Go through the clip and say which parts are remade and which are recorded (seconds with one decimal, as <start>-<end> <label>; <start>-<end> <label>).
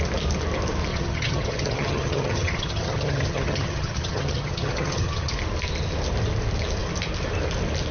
0.0-0.9 recorded; 0.9-5.3 remade; 5.3-7.9 recorded